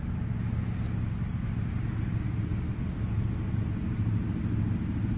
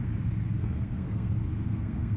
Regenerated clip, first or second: second